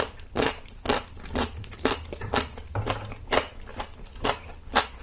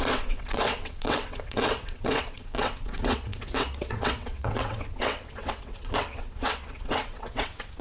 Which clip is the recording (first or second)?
first